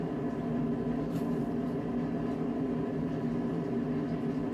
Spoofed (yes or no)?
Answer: no